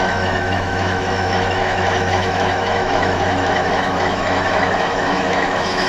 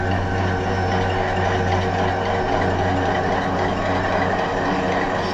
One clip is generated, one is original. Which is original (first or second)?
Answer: second